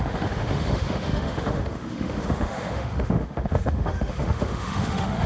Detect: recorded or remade remade